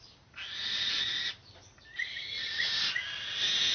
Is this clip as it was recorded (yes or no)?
yes